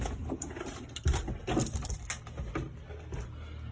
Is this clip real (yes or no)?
yes